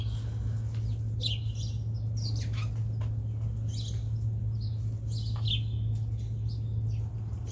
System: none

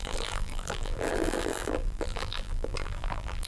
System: vocoder, BigVGAN v2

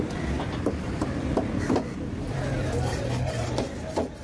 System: vocoder, BigVGAN v2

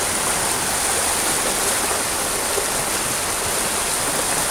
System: none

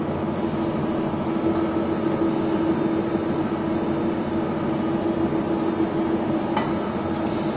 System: none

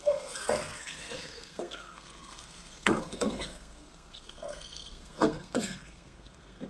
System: codec, SNAC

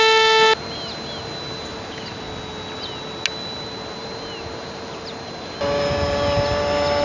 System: none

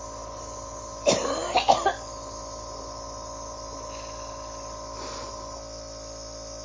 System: none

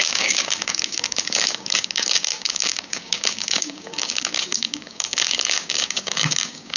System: codec, DAC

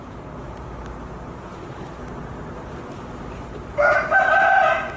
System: none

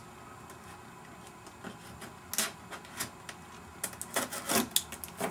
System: none